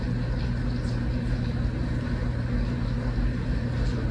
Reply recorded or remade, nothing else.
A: recorded